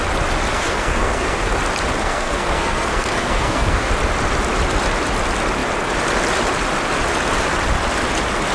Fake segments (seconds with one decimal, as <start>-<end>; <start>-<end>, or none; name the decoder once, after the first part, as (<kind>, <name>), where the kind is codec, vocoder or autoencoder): 0.5-1.6 (codec, SNAC); 2.0-3.9